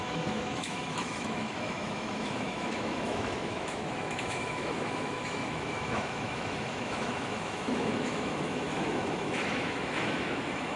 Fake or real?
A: fake